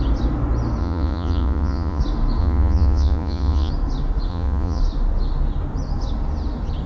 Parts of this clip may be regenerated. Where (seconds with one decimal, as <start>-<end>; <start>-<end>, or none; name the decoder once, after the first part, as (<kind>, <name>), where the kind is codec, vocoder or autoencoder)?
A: 0.8-2.0 (vocoder, Vocos); 2.4-3.7; 4.3-4.8